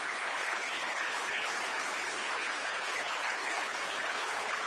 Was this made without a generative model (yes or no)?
no